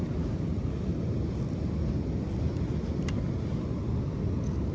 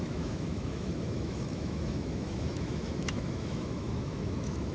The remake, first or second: second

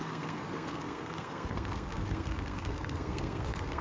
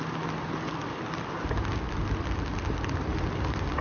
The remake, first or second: first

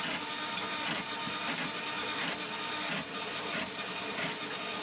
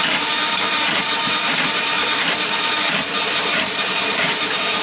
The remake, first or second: second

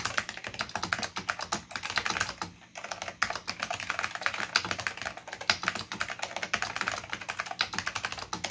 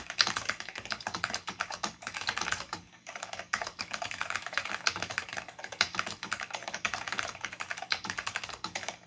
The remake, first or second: second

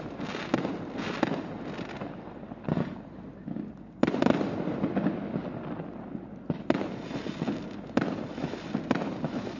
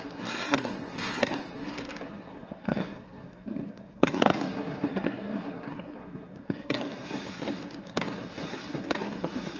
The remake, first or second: second